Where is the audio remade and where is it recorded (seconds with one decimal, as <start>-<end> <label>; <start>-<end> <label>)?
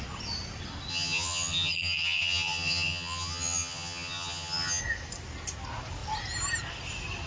0.0-0.9 recorded; 0.9-4.8 remade; 4.8-7.3 recorded